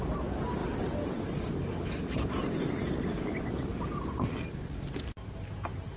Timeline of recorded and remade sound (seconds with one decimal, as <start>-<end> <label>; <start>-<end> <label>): 0.0-6.0 recorded